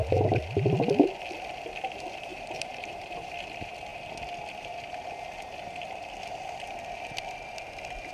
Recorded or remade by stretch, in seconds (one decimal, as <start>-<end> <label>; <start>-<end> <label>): 0.0-2.3 recorded; 2.3-3.3 remade; 3.3-8.1 recorded